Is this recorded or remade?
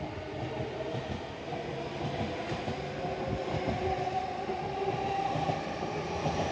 recorded